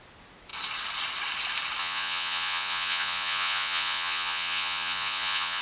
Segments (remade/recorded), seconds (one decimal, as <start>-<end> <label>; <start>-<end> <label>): 0.0-1.8 recorded; 1.8-5.6 remade